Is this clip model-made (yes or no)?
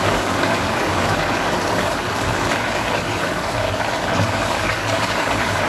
yes